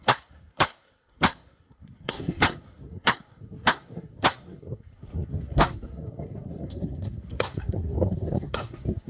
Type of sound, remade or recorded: remade